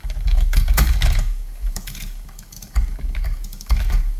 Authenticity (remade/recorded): remade